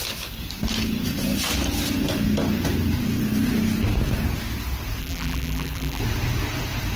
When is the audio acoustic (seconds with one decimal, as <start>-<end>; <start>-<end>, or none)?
0.0-5.0; 6.0-7.0